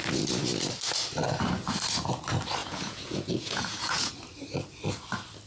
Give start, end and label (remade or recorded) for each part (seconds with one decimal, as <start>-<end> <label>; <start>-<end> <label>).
0.0-2.6 recorded; 2.6-4.1 remade; 4.1-5.5 recorded